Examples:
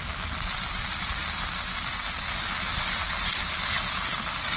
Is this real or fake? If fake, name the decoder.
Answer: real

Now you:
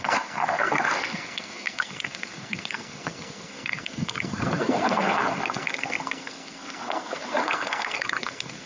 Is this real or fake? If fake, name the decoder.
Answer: fake, codec, SNAC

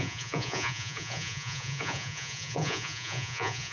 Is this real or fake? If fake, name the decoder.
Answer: fake, vocoder, Vocos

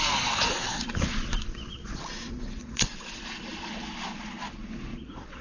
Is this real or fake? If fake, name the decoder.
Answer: fake, vocoder, Vocos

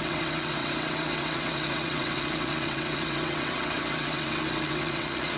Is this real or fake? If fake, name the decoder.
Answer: fake, vocoder, WaveNeXt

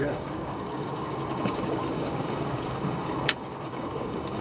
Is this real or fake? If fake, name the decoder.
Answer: fake, codec, DAC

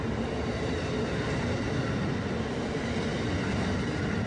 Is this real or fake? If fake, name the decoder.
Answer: real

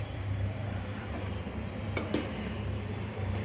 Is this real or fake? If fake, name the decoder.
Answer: fake, vocoder, BigVGAN v2